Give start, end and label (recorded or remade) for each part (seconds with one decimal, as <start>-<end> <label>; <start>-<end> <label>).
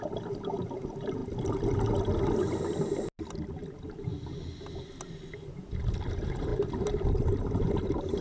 0.0-1.2 remade; 1.2-6.1 recorded; 6.1-8.2 remade